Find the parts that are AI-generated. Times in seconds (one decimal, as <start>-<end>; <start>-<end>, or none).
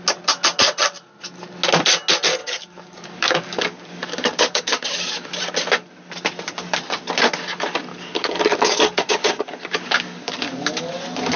2.4-5.4; 7.9-10.9